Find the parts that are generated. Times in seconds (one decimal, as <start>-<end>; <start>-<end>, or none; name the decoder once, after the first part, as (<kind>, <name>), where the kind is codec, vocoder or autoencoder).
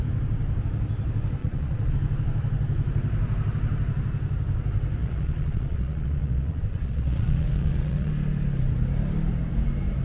1.4-1.9 (vocoder, Vocos); 5.0-8.1